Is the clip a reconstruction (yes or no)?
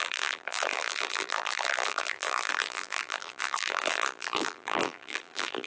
yes